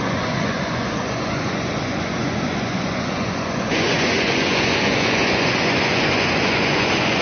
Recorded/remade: remade